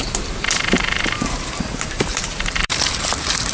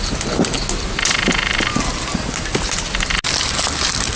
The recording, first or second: second